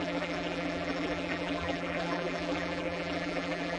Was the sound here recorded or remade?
remade